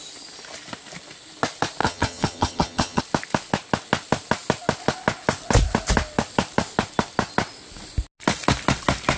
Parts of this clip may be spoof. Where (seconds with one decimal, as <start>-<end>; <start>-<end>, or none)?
1.8-3.0